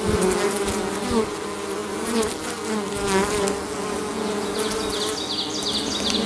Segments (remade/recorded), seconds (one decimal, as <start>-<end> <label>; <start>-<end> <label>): 0.0-6.3 recorded